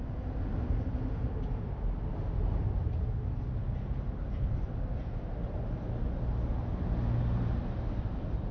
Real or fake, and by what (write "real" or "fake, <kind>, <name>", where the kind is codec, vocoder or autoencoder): real